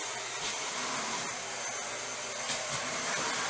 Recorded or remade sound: recorded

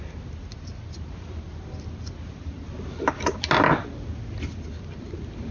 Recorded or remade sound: recorded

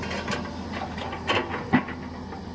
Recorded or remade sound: recorded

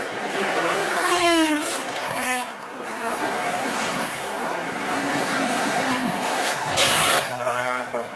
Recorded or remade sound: remade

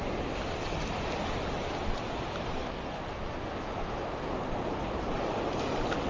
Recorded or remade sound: recorded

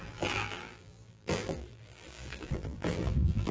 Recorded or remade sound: remade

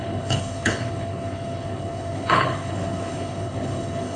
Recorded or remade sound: remade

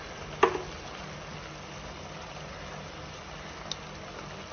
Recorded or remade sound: recorded